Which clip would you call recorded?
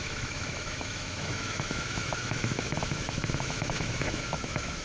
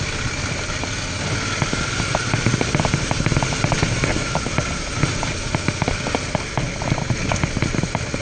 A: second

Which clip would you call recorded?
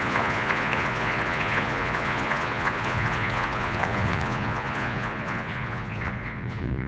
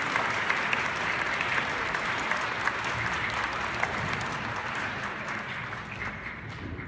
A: second